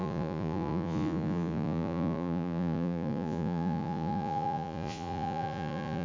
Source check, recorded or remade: remade